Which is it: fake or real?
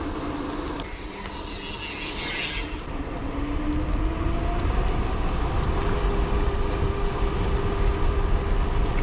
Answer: real